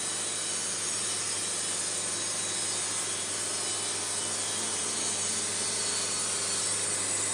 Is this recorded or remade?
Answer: recorded